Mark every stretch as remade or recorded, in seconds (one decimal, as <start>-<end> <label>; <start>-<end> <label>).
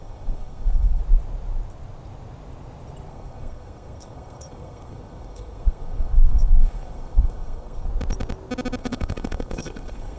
0.0-1.0 remade; 1.0-3.1 recorded; 3.1-7.9 remade; 7.9-8.8 recorded; 8.8-10.2 remade